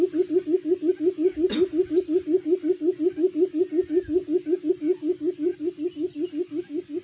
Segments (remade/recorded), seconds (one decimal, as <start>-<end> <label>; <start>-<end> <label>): 0.0-5.5 recorded; 5.5-6.3 remade; 6.3-7.0 recorded